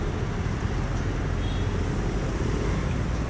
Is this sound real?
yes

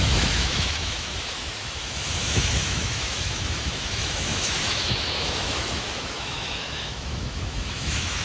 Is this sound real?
no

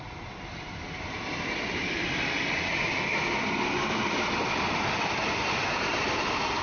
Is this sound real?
no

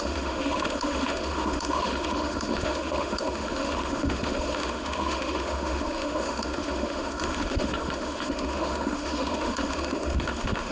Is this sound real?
no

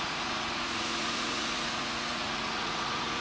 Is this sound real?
no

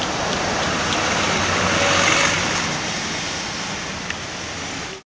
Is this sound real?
yes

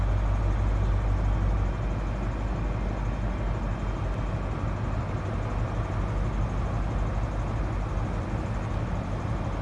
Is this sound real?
yes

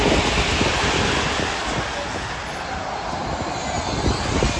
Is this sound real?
yes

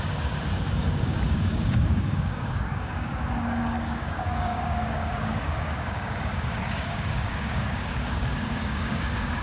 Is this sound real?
no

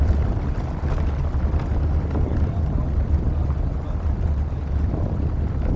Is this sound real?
yes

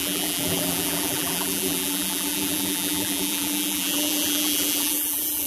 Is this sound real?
no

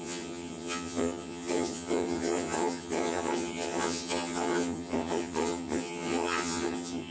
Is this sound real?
no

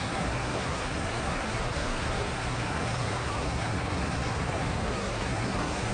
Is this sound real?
no